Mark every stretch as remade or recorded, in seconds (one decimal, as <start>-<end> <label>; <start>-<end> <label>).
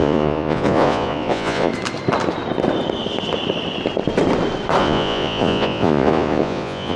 0.0-1.7 remade; 1.7-4.8 recorded; 4.8-7.0 remade